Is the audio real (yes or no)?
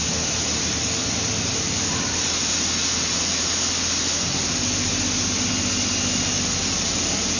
yes